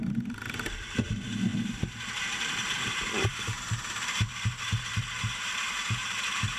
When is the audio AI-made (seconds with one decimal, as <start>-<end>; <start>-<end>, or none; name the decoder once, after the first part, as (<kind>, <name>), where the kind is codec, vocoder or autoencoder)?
0.0-1.5 (vocoder, BigVGAN v2); 2.2-6.6